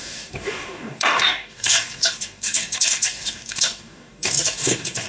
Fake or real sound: fake